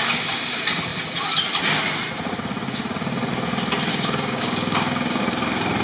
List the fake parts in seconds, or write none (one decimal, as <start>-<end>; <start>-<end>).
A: 3.9-5.2